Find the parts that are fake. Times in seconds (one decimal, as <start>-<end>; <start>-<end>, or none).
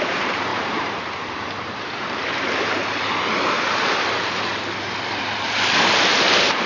0.5-2.0